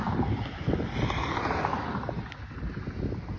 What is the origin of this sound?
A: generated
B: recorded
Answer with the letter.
B